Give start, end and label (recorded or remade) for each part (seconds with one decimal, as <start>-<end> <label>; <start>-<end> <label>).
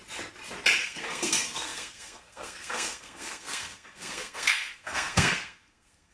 0.0-0.8 recorded; 0.8-6.1 remade